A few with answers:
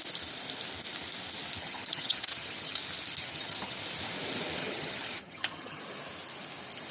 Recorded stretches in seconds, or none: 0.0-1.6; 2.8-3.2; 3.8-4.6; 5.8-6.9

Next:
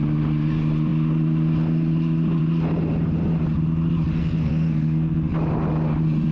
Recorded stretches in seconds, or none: 0.0-4.2; 5.3-6.3

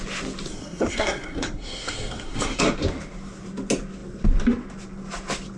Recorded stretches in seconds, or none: 0.0-0.5; 2.6-5.6

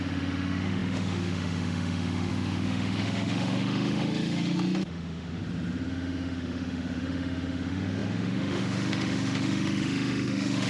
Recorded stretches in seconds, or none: 5.4-5.9

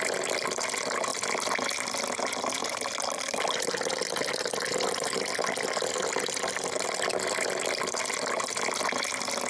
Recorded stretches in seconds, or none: 0.0-9.5